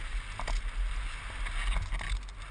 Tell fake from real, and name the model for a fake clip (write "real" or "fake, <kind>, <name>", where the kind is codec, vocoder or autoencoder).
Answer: real